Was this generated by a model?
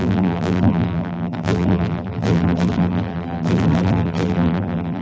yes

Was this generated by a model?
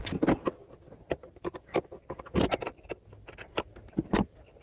no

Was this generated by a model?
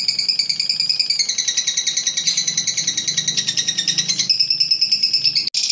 no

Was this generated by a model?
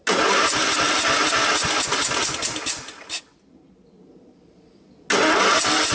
no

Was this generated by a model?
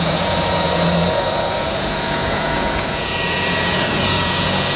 yes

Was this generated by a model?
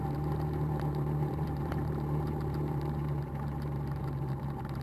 yes